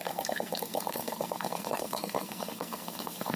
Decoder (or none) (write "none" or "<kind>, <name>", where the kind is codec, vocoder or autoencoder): codec, SNAC